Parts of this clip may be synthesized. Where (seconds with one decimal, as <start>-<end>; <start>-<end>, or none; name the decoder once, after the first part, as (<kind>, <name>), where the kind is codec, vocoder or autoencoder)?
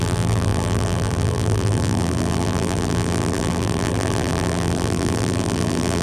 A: 0.0-6.0 (vocoder, BigVGAN v2)